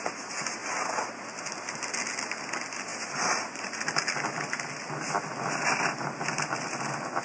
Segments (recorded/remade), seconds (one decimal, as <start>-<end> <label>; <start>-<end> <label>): 0.0-7.2 recorded